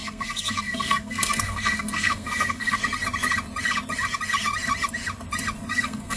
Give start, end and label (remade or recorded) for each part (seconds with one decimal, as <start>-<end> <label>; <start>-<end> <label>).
0.0-2.8 remade; 2.8-5.7 recorded; 5.7-6.2 remade